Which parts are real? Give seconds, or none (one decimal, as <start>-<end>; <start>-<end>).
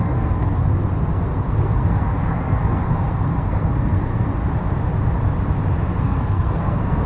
0.6-1.1; 4.4-6.0